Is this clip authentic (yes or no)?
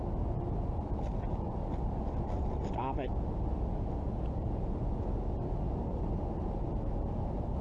yes